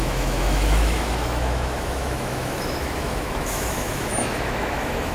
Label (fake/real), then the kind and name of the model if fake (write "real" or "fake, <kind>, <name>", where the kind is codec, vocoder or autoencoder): fake, autoencoder, DAC-VAE